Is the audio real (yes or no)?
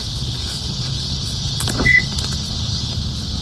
no